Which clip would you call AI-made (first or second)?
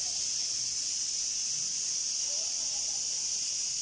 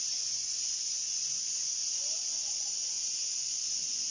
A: second